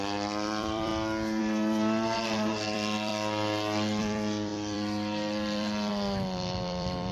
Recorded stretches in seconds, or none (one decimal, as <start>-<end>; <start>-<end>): 0.9-1.4; 3.1-4.0